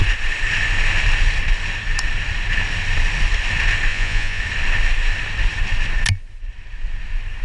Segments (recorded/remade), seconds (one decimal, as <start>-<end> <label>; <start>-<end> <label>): 0.0-3.9 recorded; 3.9-4.4 remade; 4.4-7.4 recorded